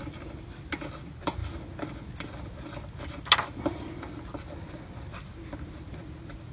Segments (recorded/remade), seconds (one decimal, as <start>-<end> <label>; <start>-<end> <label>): 0.0-6.5 recorded